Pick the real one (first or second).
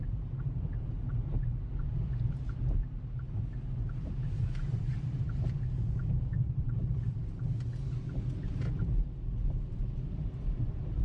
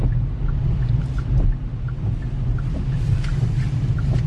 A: second